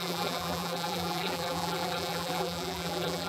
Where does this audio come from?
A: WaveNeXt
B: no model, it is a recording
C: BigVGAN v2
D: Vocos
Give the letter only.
C